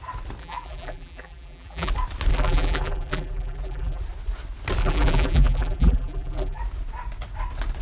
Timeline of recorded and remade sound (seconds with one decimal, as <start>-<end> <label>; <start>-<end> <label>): 0.0-0.4 recorded; 0.4-1.9 remade; 1.9-2.3 recorded; 2.3-4.0 remade; 4.0-4.8 recorded; 4.8-6.6 remade; 6.6-7.8 recorded